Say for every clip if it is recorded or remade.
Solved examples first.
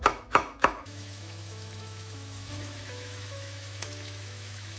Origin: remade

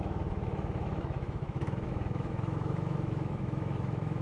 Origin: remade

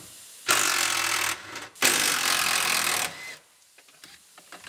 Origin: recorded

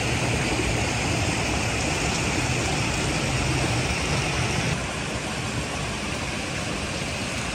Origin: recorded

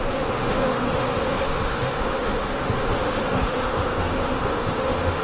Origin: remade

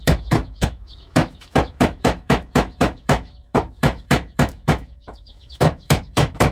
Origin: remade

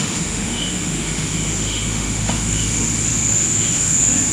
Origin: remade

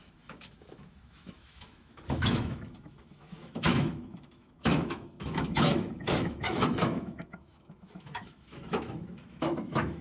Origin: remade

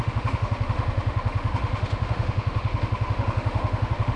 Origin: remade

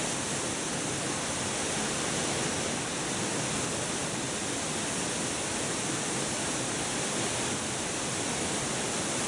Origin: recorded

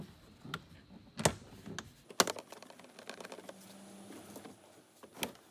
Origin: recorded